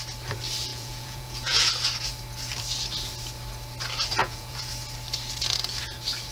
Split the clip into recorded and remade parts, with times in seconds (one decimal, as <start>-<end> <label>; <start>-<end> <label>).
0.0-0.7 recorded; 0.7-1.7 remade; 1.7-4.2 recorded; 4.2-4.7 remade; 4.7-6.3 recorded